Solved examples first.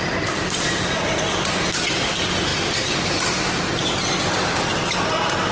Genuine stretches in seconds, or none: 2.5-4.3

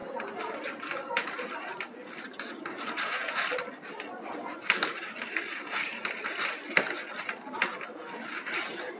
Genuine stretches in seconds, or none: 0.0-3.2; 5.3-9.0

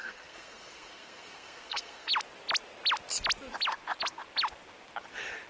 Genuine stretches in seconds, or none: 2.1-5.5

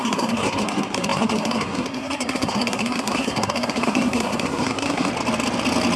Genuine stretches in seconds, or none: 5.1-6.0

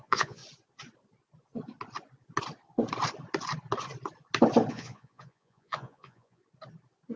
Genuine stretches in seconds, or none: 0.4-4.7; 6.4-7.2